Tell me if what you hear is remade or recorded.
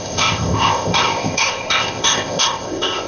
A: remade